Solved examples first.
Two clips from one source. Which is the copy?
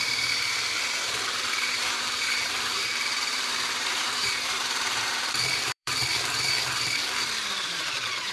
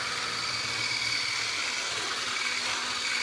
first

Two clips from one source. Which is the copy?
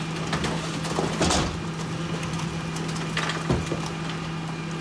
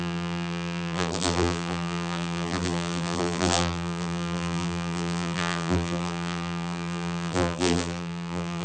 second